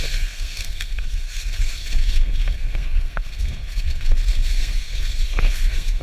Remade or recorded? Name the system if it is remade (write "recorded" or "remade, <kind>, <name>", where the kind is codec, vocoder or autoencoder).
remade, codec, SNAC